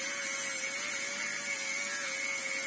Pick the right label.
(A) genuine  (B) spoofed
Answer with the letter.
A